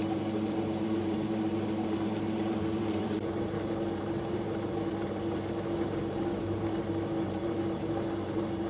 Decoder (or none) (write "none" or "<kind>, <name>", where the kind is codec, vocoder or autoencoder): vocoder, BigVGAN v2